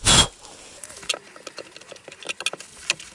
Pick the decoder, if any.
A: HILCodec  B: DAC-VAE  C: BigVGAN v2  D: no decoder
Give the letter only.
D